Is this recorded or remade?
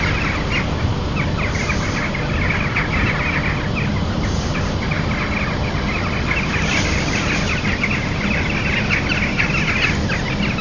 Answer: recorded